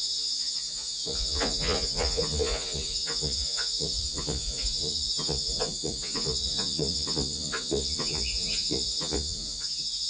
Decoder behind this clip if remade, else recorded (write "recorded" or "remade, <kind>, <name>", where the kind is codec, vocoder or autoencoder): remade, vocoder, Vocos